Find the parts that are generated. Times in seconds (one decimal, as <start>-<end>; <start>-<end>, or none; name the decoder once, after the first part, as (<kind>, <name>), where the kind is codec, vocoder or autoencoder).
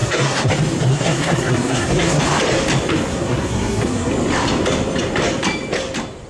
0.0-0.5 (codec, SNAC); 0.9-2.2; 3.1-4.1